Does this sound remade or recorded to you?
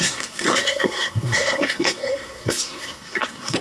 remade